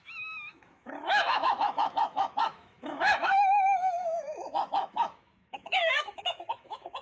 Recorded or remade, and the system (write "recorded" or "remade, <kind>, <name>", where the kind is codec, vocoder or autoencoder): remade, autoencoder, DAC-VAE